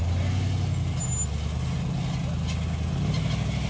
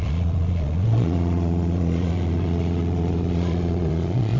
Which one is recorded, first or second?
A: first